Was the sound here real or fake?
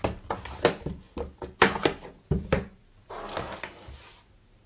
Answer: real